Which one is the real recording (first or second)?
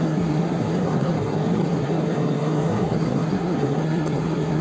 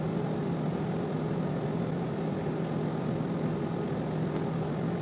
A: second